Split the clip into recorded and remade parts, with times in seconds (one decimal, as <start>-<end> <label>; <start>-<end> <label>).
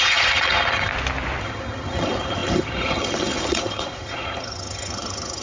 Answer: 0.0-0.9 remade; 0.9-1.4 recorded; 1.4-5.4 remade